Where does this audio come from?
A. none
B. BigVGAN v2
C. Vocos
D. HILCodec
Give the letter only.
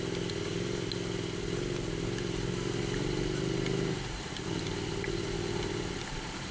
A